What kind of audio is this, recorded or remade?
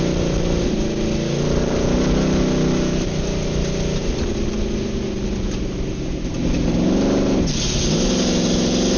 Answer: recorded